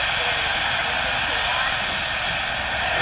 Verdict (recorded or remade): recorded